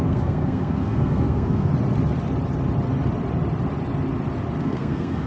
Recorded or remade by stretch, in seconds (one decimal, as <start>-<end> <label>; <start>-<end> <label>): 0.0-1.7 remade; 1.7-4.6 recorded; 4.6-5.3 remade